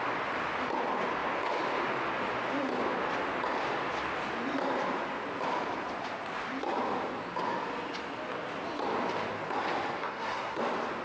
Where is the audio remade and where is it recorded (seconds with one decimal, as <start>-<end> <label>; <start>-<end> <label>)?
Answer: 0.0-10.0 recorded; 10.0-10.6 remade; 10.6-11.0 recorded